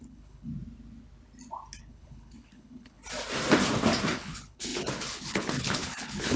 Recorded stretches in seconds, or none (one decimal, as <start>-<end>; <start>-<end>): 0.5-1.8; 3.0-4.1